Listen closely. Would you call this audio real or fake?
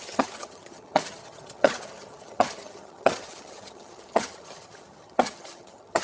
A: fake